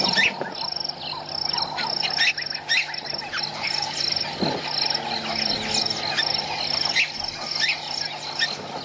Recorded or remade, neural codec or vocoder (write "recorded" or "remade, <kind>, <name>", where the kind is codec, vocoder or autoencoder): recorded